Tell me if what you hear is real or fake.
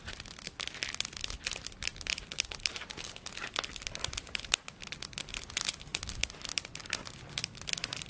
real